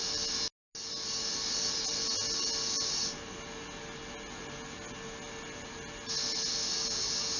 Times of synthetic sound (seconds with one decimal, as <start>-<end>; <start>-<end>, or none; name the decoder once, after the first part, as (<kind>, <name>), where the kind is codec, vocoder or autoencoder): none